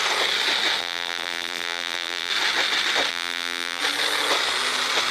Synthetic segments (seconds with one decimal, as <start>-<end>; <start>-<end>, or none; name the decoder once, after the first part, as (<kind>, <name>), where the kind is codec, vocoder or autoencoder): 0.8-2.3 (vocoder, BigVGAN v2); 3.1-3.8

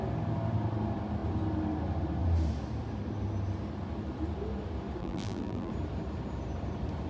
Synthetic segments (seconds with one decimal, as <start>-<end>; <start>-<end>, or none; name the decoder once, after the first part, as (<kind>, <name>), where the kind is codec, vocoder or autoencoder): 5.0-5.7 (vocoder, BigVGAN v2)

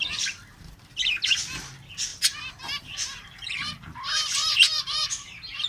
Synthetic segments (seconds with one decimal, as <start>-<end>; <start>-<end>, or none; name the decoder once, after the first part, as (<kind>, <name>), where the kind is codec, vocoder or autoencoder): 0.0-5.7 (vocoder, BigVGAN v2)

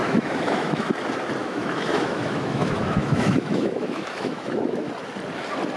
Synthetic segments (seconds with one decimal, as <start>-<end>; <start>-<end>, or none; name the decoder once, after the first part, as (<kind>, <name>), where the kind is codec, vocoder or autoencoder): 0.0-0.9 (autoencoder, DAC-VAE); 1.4-4.9

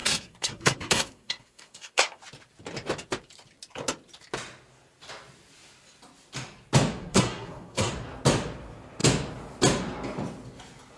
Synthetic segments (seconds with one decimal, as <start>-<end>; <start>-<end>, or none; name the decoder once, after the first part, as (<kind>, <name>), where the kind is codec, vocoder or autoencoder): 0.0-2.2 (codec, SNAC); 7.0-7.9

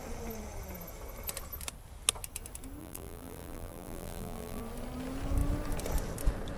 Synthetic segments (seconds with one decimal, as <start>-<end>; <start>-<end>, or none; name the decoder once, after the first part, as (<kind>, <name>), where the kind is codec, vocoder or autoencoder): 2.8-4.6 (vocoder, BigVGAN v2)

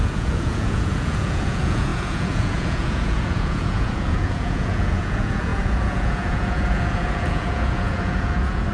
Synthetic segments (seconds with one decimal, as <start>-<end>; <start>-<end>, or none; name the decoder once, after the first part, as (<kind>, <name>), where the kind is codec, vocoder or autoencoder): 0.0-8.7 (vocoder, Vocos)